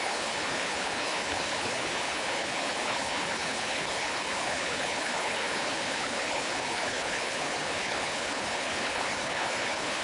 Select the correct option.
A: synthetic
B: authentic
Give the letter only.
A